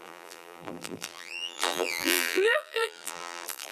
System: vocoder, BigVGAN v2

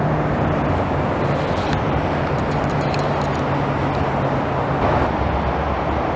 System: none